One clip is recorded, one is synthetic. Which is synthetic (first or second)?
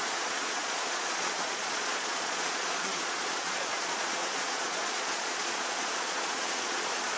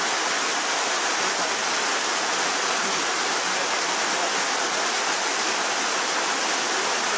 first